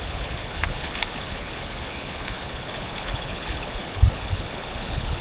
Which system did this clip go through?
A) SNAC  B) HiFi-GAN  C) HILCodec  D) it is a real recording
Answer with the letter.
C